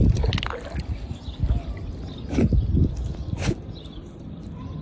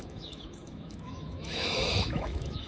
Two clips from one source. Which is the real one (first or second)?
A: first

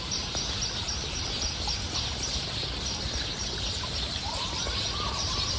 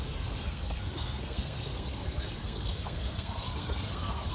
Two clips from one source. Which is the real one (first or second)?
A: first